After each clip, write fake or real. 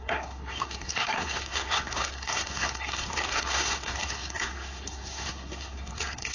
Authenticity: fake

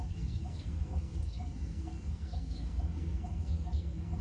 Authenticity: fake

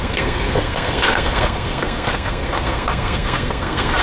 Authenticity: fake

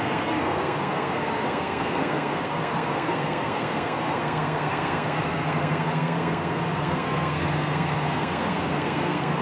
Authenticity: fake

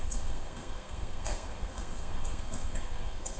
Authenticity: fake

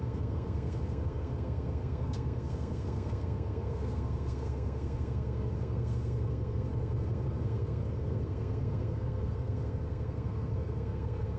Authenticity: fake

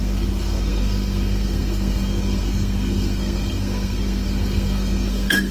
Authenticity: fake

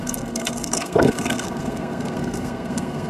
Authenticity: fake